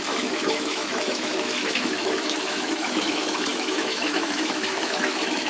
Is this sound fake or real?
fake